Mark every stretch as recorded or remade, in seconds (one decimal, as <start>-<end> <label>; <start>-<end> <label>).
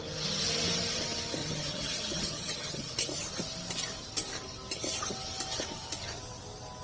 0.0-1.4 recorded; 1.4-2.9 remade; 2.9-6.8 recorded